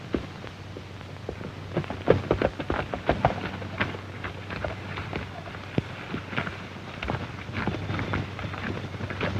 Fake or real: real